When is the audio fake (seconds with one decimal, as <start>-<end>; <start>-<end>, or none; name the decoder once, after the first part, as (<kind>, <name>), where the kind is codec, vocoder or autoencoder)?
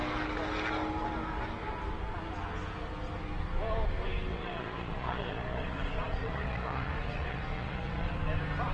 4.3-8.1 (vocoder, Vocos)